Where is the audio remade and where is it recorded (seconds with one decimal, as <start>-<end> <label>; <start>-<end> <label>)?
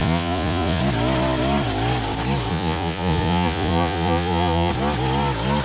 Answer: 0.0-0.8 remade; 0.8-2.5 recorded; 2.5-4.7 remade; 4.7-5.6 recorded